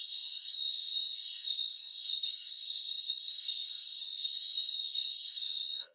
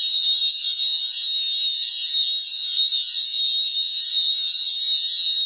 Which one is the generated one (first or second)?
first